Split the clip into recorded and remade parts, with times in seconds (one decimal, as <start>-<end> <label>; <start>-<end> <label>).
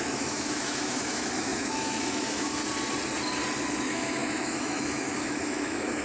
0.0-2.6 remade; 2.6-3.7 recorded; 3.7-6.0 remade